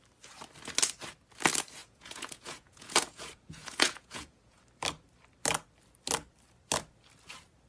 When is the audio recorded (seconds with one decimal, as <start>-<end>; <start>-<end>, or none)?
0.0-1.8; 4.6-7.7